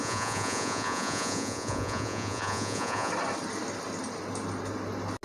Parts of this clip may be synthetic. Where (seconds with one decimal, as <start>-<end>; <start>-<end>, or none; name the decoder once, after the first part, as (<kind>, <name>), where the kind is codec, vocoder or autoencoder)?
0.0-3.1 (vocoder, Vocos)